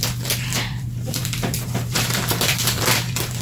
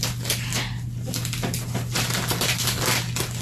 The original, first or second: second